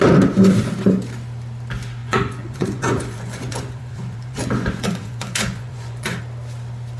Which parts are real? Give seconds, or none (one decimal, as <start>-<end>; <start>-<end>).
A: 0.0-2.0; 6.2-7.0